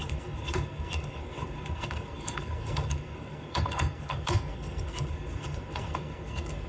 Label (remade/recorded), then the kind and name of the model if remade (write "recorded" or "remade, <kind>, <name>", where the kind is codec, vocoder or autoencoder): remade, codec, SNAC